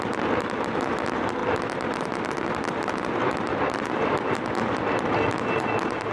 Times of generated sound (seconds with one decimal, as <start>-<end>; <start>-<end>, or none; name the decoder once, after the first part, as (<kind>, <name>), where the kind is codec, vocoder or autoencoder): none